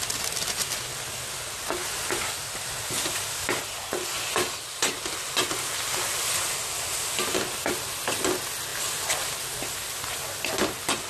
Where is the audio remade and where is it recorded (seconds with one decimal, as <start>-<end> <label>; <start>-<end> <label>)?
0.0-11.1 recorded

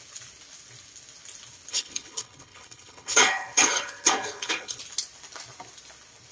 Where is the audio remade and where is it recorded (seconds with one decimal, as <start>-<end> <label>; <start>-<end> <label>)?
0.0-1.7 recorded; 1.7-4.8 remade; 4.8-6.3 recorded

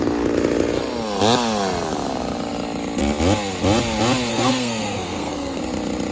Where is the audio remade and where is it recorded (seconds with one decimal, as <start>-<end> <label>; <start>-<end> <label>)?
0.0-4.3 recorded; 4.3-5.6 remade; 5.6-6.1 recorded

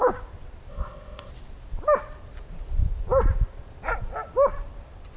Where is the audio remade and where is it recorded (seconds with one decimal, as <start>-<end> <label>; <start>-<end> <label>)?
0.0-0.7 recorded; 0.7-1.3 remade; 1.3-5.2 recorded